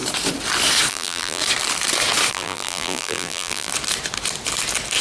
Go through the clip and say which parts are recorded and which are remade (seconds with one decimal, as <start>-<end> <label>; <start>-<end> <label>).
0.0-0.9 recorded; 0.9-1.4 remade; 1.4-2.3 recorded; 2.3-3.7 remade; 3.7-5.0 recorded